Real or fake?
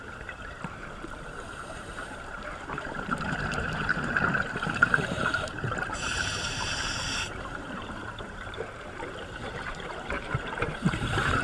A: fake